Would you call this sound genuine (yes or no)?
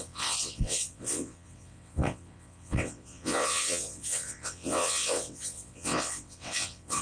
no